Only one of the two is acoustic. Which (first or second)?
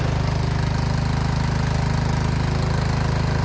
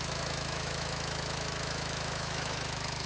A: first